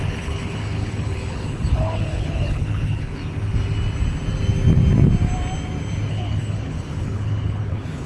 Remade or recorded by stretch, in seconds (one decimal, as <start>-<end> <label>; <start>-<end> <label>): 0.0-3.2 remade; 3.2-6.1 recorded; 6.1-8.1 remade